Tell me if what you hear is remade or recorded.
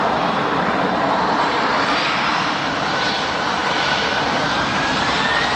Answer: remade